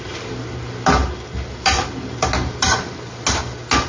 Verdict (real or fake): real